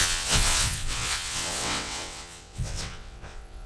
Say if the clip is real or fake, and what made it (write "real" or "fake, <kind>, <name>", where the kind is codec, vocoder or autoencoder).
fake, vocoder, WaveNeXt